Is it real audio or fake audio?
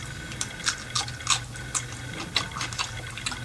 real